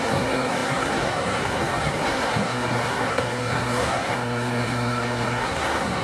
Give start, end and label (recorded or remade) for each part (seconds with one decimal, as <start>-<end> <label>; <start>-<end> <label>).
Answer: 0.0-6.0 remade